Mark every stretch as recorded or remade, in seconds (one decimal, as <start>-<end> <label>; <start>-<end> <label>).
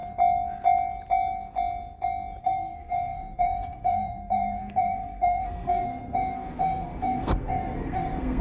0.0-2.4 recorded; 2.4-8.4 remade